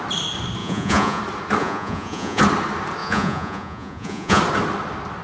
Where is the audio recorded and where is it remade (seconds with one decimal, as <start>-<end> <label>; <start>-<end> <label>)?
0.0-0.6 recorded; 0.6-1.2 remade; 1.2-1.6 recorded; 1.6-2.4 remade; 2.4-3.0 recorded; 3.0-4.4 remade; 4.4-5.2 recorded